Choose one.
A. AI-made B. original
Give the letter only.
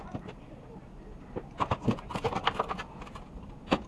B